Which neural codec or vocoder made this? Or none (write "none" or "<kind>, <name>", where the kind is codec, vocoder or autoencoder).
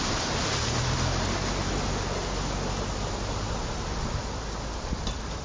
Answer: none